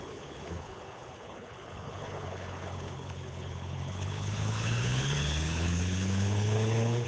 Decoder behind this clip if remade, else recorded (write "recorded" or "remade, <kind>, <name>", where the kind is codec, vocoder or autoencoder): remade, codec, HILCodec